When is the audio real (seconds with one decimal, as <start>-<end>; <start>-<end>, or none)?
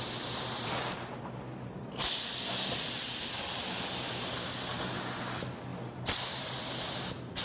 0.0-0.6; 3.6-5.7; 6.9-7.4